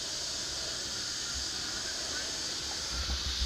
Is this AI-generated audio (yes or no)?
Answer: no